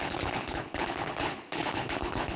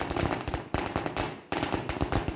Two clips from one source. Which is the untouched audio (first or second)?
second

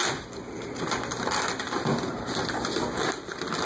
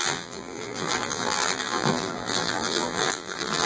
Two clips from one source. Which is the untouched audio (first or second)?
first